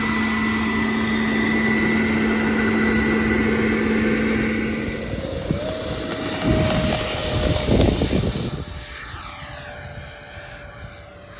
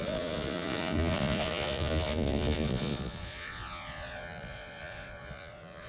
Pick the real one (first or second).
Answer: first